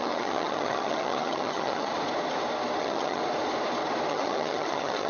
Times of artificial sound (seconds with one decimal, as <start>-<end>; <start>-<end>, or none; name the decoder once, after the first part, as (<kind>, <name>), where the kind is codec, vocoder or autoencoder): 0.0-1.9 (vocoder, HiFi-GAN); 2.8-3.2; 4.1-5.1